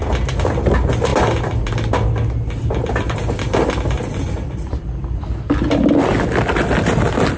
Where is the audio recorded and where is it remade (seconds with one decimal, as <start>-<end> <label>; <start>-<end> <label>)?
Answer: 0.0-7.4 recorded